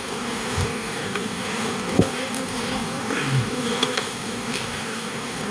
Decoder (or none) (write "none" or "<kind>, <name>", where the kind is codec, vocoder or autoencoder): codec, DAC